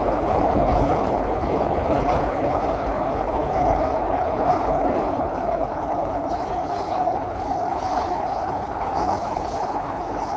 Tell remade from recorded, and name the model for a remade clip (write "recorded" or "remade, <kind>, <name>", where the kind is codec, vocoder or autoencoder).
remade, codec, HILCodec